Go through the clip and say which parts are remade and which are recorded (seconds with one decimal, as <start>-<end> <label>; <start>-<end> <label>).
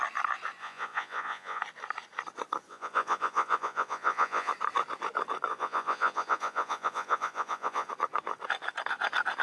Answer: 0.0-0.6 recorded; 0.6-1.6 remade; 1.6-2.7 recorded; 2.7-4.5 remade; 4.5-5.5 recorded; 5.5-7.9 remade; 7.9-9.4 recorded